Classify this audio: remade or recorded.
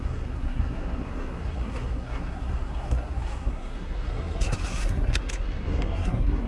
remade